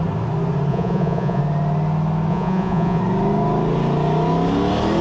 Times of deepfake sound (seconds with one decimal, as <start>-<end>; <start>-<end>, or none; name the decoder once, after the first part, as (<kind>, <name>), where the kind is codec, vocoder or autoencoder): 0.7-1.4 (vocoder, Vocos); 2.3-3.0